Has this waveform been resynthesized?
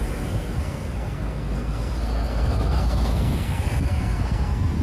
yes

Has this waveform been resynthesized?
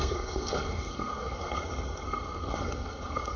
yes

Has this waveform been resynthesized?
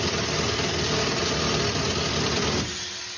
no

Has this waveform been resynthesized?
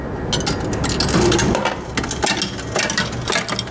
no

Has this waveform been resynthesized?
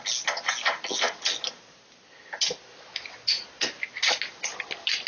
no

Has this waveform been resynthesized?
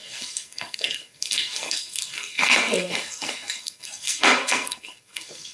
yes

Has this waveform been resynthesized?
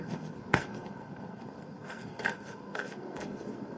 yes